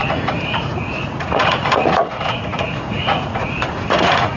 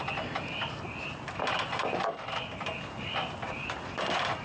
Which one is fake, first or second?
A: first